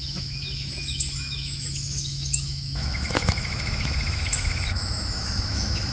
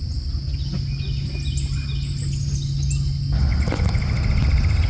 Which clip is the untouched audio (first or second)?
second